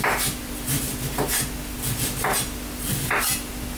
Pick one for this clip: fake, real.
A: real